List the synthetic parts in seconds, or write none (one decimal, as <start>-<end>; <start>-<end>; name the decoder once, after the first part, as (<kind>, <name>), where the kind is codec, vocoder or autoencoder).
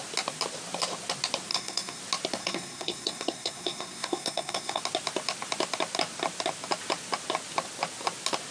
1.5-2.0 (codec, SNAC); 2.4-4.8